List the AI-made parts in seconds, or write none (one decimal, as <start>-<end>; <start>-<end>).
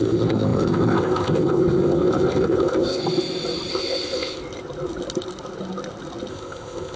0.0-3.0; 3.7-4.4; 6.3-7.0